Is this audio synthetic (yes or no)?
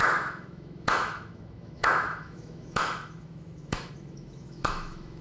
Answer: yes